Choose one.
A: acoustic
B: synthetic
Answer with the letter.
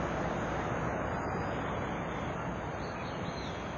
A